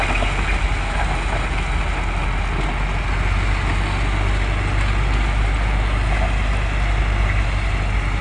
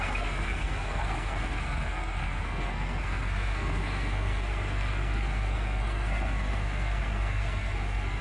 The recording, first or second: first